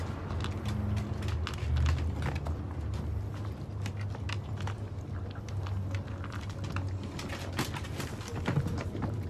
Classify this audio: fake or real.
real